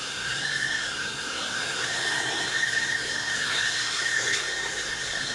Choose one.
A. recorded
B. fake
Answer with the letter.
B